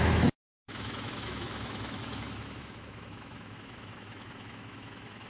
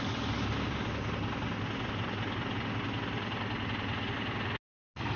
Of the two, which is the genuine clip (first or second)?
second